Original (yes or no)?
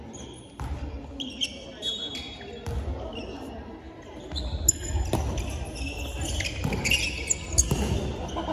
yes